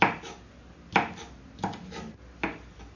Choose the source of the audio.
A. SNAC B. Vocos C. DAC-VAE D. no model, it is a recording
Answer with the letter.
D